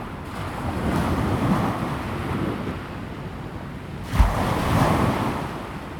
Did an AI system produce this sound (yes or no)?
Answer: no